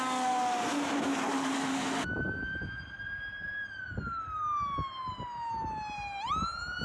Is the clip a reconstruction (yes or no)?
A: no